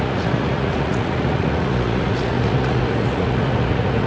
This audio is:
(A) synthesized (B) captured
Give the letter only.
A